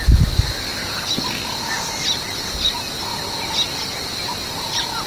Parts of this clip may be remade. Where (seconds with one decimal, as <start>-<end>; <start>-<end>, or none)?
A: none